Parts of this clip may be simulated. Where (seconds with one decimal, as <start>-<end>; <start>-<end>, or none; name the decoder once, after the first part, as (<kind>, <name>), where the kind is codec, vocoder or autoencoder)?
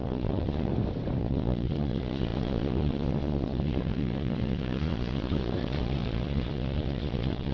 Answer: 0.0-0.7 (vocoder, Vocos); 1.2-7.5